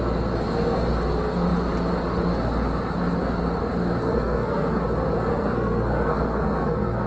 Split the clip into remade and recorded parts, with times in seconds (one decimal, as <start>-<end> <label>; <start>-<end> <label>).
0.0-4.0 recorded; 4.0-4.8 remade; 4.8-5.3 recorded; 5.3-7.1 remade